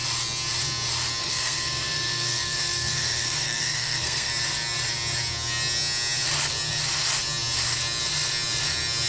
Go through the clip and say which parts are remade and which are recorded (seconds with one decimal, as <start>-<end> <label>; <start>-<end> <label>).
0.0-1.2 recorded; 1.2-4.3 remade; 4.3-9.1 recorded